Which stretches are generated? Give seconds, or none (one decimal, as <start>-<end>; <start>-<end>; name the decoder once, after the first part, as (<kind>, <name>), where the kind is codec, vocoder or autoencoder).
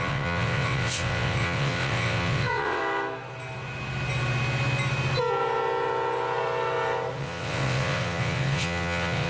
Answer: 0.0-2.8 (vocoder, WaveNeXt); 7.2-9.3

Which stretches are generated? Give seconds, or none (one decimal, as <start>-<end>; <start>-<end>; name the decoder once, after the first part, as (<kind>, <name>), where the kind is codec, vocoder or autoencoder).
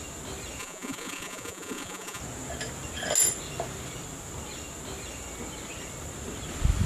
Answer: 0.6-2.2 (vocoder, Vocos)